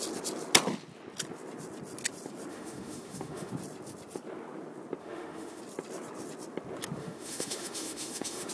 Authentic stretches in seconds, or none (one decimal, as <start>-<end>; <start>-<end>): 0.0-2.5; 3.5-5.0; 5.6-7.0